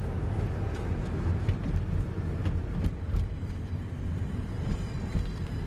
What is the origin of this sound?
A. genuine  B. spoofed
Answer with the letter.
A